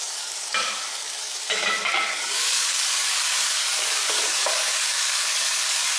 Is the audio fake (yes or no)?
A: yes